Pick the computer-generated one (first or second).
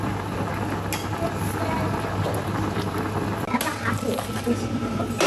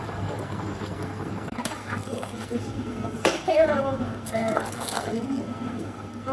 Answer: second